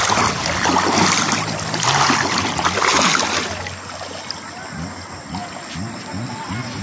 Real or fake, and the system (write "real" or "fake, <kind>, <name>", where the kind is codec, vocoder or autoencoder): real